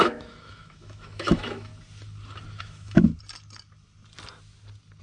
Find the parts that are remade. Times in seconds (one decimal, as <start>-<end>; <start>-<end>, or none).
0.0-1.7; 2.6-3.1

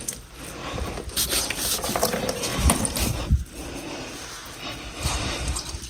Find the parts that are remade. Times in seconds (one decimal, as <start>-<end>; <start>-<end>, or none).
none

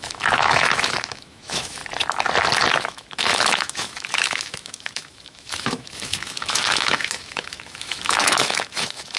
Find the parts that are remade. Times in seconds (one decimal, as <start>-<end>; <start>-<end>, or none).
0.0-1.8; 2.7-9.2

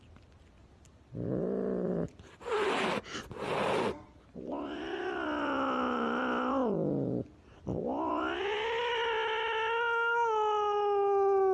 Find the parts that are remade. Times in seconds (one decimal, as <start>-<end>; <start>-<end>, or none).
none